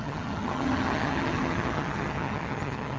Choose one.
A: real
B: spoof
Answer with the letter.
B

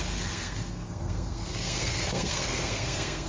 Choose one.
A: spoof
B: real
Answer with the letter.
A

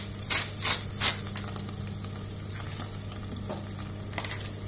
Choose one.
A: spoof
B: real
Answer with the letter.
B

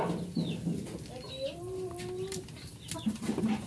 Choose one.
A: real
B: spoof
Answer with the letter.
A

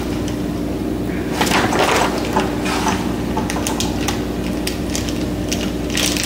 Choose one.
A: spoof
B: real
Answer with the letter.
B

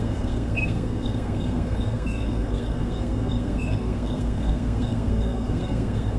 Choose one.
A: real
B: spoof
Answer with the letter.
B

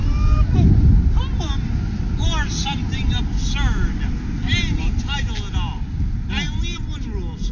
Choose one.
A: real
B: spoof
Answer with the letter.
A